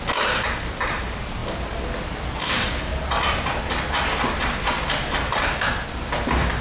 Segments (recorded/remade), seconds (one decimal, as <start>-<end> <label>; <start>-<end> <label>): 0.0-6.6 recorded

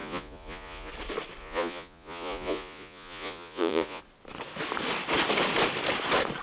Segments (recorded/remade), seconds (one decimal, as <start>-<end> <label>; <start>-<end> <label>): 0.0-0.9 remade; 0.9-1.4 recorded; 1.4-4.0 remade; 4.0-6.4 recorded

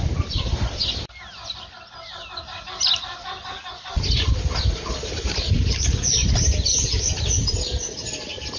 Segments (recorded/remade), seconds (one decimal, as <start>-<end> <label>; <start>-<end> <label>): 0.0-4.9 recorded; 4.9-5.5 remade; 5.5-6.2 recorded; 6.2-7.5 remade; 7.5-8.6 recorded

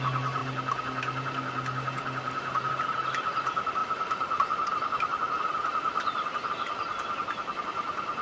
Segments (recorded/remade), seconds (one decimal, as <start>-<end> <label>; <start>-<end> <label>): 0.0-3.8 recorded; 3.8-6.5 remade; 6.5-8.2 recorded

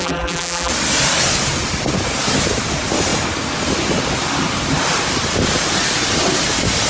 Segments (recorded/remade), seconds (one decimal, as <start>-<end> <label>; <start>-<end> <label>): 0.0-0.7 remade; 0.7-6.9 recorded

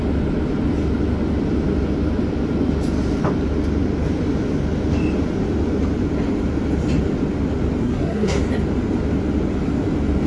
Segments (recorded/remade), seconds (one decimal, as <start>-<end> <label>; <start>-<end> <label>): 0.0-7.8 recorded; 7.8-8.4 remade; 8.4-10.3 recorded